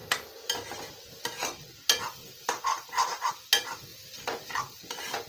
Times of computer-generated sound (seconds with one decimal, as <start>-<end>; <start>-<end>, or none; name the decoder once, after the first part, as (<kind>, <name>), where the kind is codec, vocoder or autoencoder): 2.2-3.3 (vocoder, BigVGAN v2)